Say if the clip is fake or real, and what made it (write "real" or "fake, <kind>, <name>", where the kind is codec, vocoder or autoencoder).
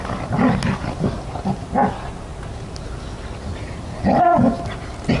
real